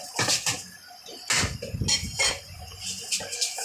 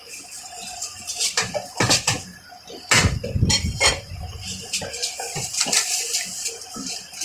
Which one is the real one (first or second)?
first